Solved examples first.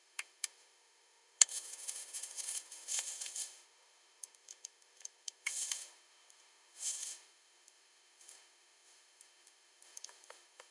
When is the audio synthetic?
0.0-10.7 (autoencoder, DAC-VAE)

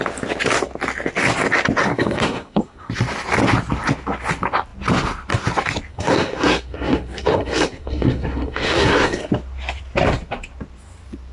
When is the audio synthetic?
1.9-2.9 (codec, SNAC); 5.9-9.3

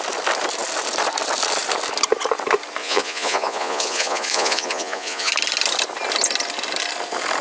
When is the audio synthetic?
2.8-5.3 (vocoder, Vocos)